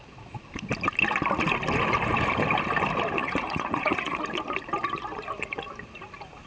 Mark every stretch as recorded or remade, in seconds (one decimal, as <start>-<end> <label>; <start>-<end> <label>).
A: 0.0-3.2 recorded; 3.2-4.2 remade; 4.2-6.5 recorded